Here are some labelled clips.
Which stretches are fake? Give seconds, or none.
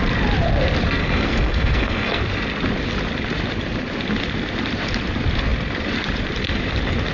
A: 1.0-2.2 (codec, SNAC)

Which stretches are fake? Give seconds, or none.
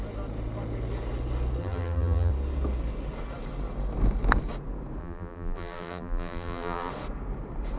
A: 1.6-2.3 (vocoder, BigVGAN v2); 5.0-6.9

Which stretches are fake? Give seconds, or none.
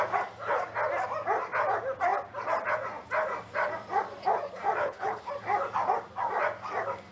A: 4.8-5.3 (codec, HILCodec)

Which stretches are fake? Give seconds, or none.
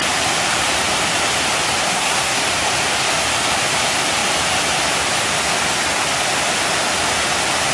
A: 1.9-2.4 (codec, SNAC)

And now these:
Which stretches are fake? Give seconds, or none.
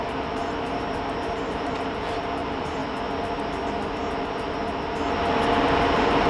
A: 0.0-2.8 (vocoder, BigVGAN v2)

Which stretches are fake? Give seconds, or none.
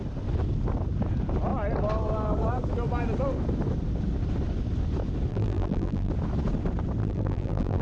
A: 5.3-6.1 (vocoder, BigVGAN v2); 7.0-7.8